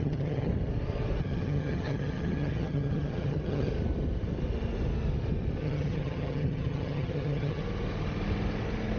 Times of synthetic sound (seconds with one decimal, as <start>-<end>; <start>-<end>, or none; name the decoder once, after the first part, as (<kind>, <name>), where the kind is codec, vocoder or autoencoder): 0.0-0.5 (vocoder, HiFi-GAN); 1.2-3.7; 5.6-7.6